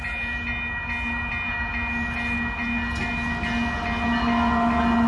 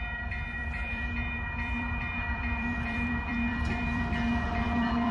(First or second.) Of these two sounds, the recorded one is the first